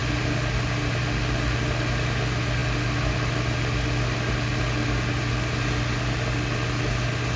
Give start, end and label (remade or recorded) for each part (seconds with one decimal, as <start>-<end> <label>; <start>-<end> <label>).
0.0-7.4 recorded